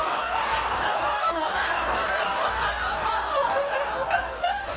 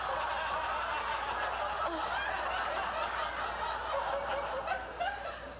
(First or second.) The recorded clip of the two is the second